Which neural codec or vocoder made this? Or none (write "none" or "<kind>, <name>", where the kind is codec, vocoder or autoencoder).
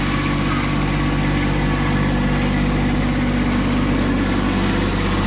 none